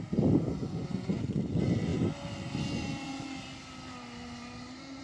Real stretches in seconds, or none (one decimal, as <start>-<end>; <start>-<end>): 0.0-0.6; 1.4-5.0